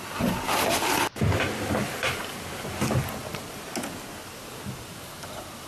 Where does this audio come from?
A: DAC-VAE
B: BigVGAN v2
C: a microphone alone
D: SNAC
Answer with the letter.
C